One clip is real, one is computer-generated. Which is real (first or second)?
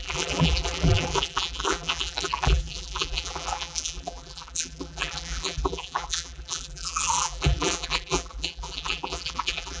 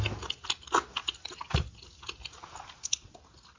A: second